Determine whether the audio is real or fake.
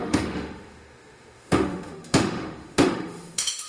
fake